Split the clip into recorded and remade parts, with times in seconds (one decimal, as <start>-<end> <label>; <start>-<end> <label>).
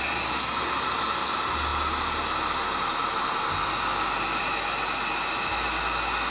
0.0-6.3 recorded